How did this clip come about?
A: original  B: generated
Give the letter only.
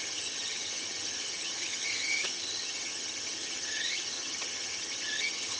B